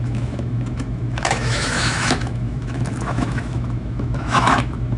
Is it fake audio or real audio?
fake